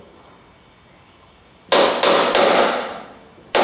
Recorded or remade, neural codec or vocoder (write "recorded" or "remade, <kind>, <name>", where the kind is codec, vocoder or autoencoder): recorded